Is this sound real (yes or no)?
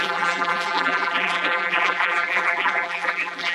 no